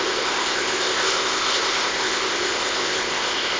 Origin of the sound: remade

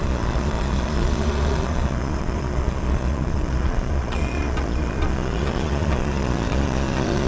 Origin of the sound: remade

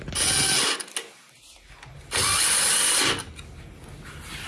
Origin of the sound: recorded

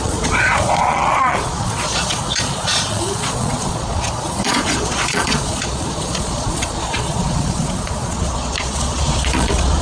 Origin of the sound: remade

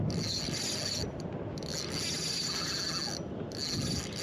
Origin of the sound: recorded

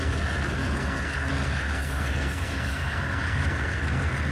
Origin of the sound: remade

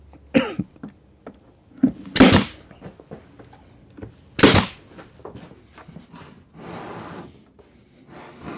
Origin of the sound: recorded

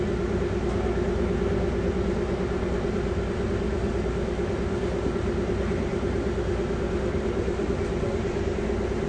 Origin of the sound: recorded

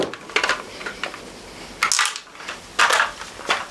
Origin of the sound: recorded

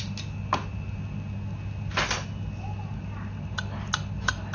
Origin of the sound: recorded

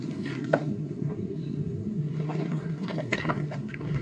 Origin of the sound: remade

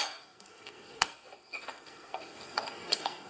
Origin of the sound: remade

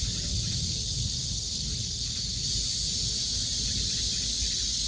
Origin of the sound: recorded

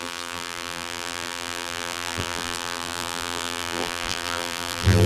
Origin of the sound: remade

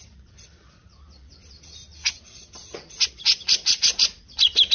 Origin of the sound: recorded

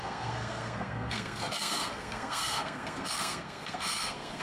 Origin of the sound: remade